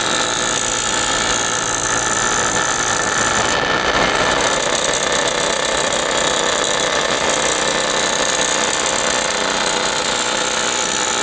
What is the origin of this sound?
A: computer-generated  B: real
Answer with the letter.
B